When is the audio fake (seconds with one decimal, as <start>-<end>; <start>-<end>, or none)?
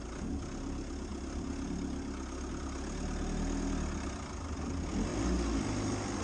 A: none